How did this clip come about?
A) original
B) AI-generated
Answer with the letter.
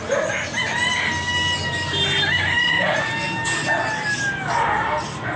A